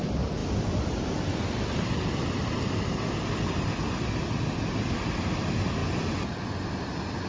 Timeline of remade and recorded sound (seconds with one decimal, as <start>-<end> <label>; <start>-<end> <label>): 0.0-7.3 recorded